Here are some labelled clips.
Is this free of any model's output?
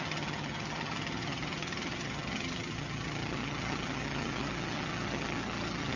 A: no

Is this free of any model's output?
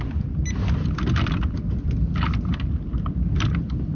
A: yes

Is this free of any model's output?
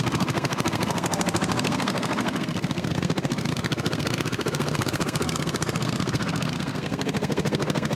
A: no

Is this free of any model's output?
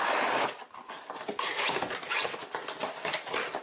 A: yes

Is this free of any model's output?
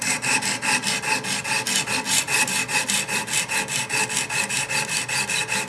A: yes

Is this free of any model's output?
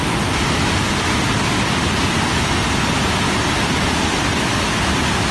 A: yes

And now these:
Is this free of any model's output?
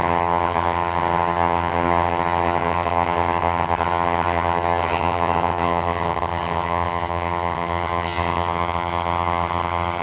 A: no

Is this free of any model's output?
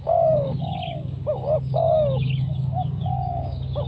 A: no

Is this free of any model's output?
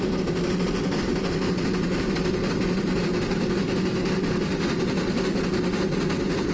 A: yes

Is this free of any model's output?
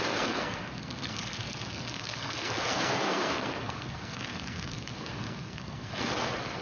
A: no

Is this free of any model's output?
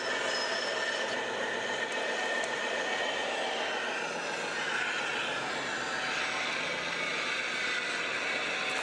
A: yes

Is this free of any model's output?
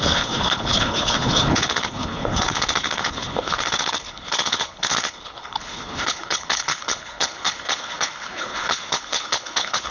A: no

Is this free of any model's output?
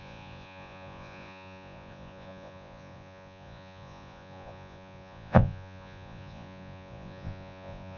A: no